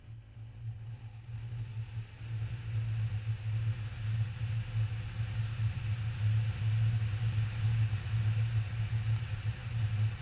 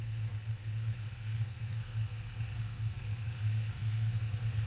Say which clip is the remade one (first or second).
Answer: second